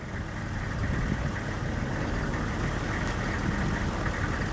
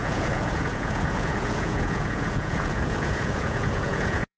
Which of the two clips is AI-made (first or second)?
second